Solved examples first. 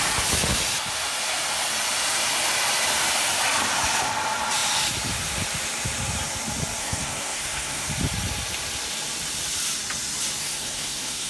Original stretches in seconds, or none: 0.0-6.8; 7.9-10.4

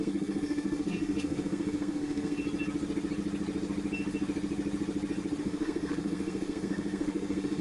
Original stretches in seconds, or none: 2.4-5.4

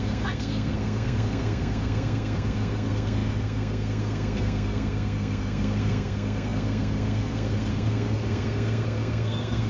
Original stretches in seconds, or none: none

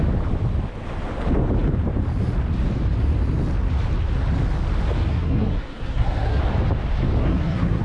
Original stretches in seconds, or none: 0.0-5.1; 6.4-7.2